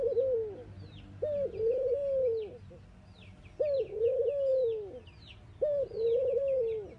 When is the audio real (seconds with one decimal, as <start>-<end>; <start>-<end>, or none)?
0.0-7.0